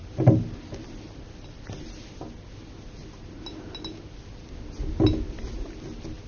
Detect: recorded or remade recorded